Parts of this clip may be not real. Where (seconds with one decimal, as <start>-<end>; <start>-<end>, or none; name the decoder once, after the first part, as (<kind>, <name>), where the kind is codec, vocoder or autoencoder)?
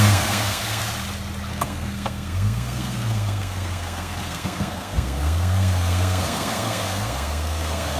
0.0-0.8 (codec, SNAC); 1.5-8.0